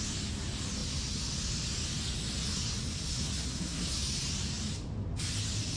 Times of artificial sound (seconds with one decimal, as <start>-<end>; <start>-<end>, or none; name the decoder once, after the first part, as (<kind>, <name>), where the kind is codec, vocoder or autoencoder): 3.1-3.9 (codec, SNAC)